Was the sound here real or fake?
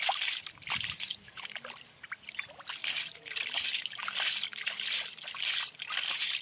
real